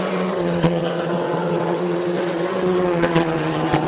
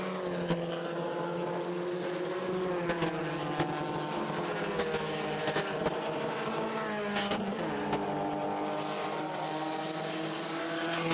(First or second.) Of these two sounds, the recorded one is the second